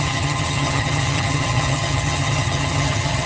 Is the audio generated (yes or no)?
yes